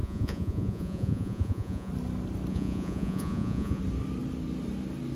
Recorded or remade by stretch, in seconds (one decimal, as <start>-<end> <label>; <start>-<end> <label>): 0.0-1.9 remade; 1.9-2.5 recorded; 2.5-3.8 remade; 3.8-5.2 recorded